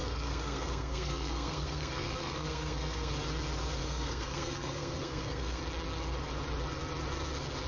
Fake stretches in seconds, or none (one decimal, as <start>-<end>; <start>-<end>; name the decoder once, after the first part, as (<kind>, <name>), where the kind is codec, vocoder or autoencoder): 0.0-3.1 (codec, SNAC); 3.8-5.6